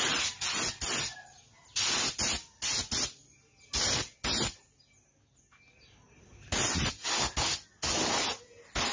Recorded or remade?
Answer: recorded